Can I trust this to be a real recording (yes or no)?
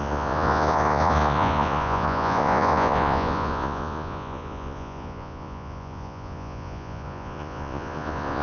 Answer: no